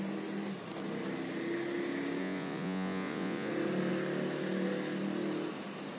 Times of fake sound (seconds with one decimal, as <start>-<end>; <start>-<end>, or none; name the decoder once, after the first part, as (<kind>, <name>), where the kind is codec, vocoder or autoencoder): 2.2-3.5 (vocoder, Vocos)